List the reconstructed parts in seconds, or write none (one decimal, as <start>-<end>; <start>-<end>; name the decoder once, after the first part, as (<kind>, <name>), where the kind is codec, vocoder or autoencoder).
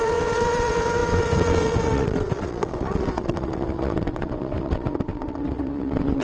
0.0-6.2 (vocoder, WaveNeXt)